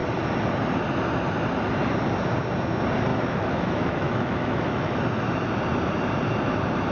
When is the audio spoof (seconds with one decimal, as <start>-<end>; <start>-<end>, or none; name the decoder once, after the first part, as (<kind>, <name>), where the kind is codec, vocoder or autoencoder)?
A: 3.1-5.0 (autoencoder, DAC-VAE)